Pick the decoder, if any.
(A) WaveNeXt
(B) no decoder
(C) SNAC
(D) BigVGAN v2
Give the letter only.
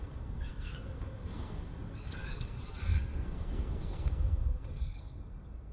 C